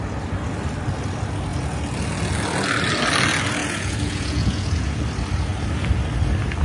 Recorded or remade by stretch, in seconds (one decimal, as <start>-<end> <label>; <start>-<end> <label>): 0.0-3.6 recorded; 3.6-5.0 remade; 5.0-6.6 recorded